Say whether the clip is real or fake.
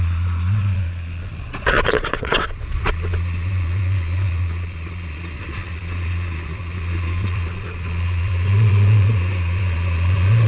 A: fake